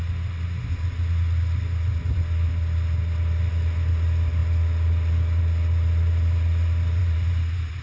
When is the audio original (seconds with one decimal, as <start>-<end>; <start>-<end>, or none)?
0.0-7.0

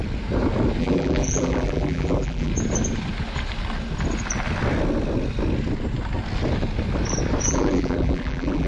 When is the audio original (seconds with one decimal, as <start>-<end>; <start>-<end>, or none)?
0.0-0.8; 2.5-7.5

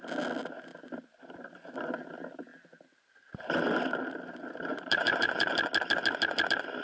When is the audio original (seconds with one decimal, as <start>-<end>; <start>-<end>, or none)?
0.0-4.7; 5.5-6.8

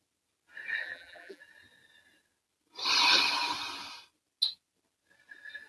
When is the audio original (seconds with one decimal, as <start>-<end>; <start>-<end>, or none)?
0.0-0.8; 1.4-5.7

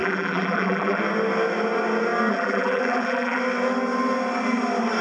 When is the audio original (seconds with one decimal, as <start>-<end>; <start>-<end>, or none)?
1.0-2.3; 3.4-5.0

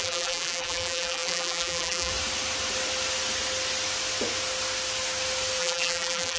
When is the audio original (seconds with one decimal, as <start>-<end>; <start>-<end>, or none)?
2.1-5.6

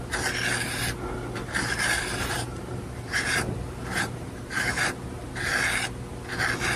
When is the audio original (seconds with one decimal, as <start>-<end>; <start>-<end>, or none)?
0.0-1.4; 5.5-6.8